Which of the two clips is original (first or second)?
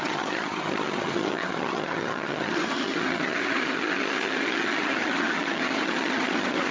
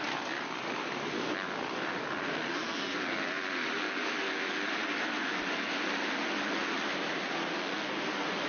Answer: second